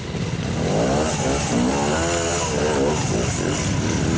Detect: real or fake real